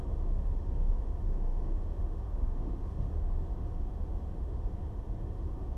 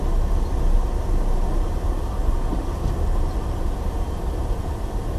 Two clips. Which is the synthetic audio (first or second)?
first